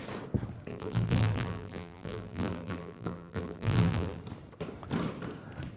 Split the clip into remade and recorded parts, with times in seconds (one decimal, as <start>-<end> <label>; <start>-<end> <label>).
0.0-0.7 recorded; 0.7-4.2 remade; 4.2-5.8 recorded